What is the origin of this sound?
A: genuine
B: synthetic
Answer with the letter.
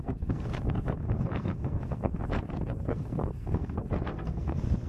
B